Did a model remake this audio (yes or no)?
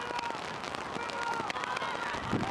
no